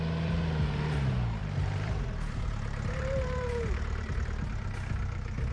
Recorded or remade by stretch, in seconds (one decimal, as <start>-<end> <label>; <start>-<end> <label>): 0.0-1.4 recorded; 1.4-4.1 remade; 4.1-5.5 recorded